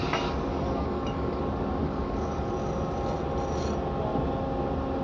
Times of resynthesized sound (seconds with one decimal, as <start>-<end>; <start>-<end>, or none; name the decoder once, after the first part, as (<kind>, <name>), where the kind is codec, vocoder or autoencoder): 0.5-1.4 (codec, DAC); 1.8-2.5